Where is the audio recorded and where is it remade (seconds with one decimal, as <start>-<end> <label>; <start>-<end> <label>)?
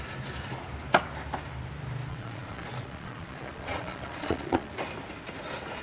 0.0-2.1 recorded; 2.1-4.7 remade; 4.7-5.8 recorded